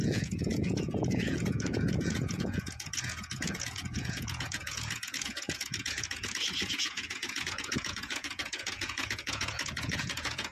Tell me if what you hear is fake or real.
fake